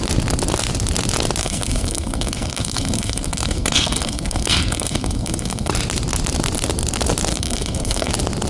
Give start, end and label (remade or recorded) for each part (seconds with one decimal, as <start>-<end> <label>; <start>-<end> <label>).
0.0-1.4 recorded; 1.4-5.7 remade; 5.7-7.3 recorded; 7.3-8.1 remade; 8.1-8.5 recorded